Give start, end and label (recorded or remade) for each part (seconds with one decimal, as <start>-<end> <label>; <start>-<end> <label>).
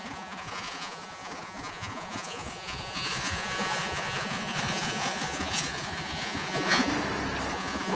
0.0-6.9 remade; 6.9-7.5 recorded; 7.5-7.9 remade